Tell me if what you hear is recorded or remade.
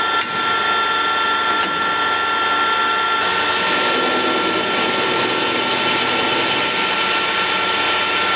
recorded